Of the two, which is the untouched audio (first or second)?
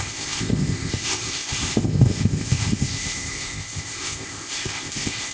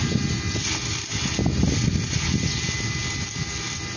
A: second